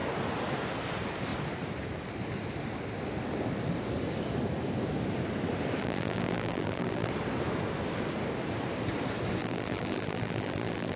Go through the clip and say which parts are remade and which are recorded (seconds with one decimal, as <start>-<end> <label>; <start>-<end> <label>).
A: 0.0-5.8 recorded; 5.8-7.1 remade; 7.1-9.4 recorded; 9.4-11.0 remade

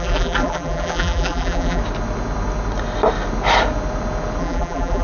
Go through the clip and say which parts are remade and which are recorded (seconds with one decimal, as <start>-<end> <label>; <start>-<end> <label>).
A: 0.0-1.8 remade; 1.8-4.4 recorded; 4.4-5.0 remade

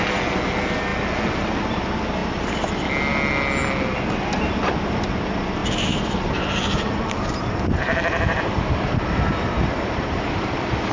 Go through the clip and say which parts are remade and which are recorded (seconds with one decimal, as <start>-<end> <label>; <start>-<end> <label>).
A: 0.0-2.2 recorded; 2.2-2.7 remade; 2.7-5.6 recorded; 5.6-10.9 remade

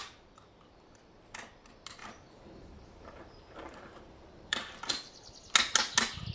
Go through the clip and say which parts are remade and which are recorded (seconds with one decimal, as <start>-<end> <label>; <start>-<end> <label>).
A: 0.0-1.0 remade; 1.0-2.0 recorded; 2.0-4.9 remade; 4.9-6.3 recorded

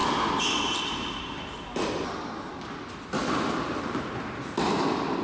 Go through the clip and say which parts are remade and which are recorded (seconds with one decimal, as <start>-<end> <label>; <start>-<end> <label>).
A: 0.0-5.2 recorded